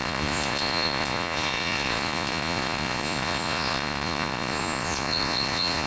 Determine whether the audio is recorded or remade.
remade